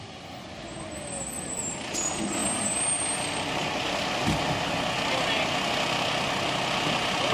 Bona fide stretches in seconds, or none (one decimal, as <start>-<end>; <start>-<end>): 0.0-7.3